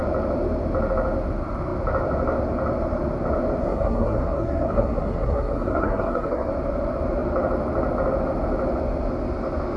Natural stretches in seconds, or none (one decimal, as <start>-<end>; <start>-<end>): 0.0-3.6; 6.5-9.8

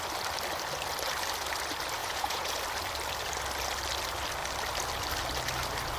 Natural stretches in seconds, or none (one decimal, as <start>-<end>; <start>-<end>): 0.0-2.0; 2.6-6.0

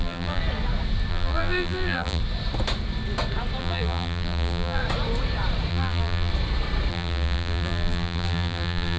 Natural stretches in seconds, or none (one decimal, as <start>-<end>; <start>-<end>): 0.4-1.1; 2.2-3.6; 4.8-5.7; 6.3-6.9